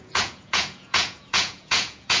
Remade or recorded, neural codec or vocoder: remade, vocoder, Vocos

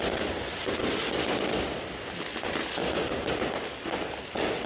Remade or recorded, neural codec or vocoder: recorded